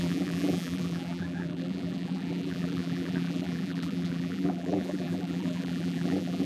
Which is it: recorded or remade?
remade